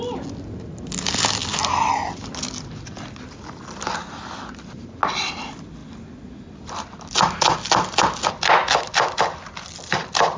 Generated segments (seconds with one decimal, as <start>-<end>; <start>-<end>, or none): none